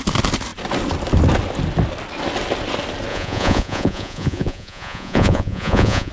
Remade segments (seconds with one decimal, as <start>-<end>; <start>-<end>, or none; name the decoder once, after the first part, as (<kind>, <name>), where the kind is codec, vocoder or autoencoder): 3.1-6.1 (vocoder, Vocos)